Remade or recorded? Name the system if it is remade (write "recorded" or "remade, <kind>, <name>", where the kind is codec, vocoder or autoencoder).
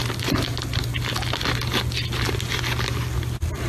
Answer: recorded